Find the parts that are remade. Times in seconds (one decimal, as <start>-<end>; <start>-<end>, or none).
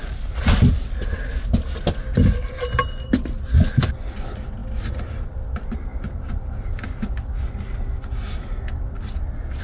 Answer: none